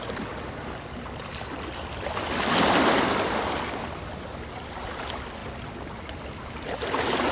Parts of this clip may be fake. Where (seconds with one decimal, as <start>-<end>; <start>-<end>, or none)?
none